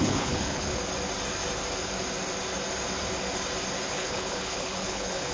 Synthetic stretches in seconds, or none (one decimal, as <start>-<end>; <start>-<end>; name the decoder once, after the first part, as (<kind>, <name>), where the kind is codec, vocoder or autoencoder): 0.0-0.7 (codec, HILCodec); 3.9-5.3